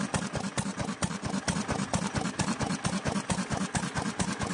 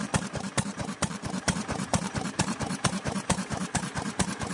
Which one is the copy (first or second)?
second